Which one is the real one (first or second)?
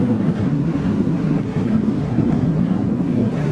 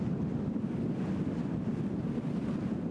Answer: second